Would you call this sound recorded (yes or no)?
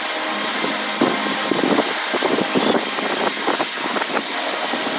yes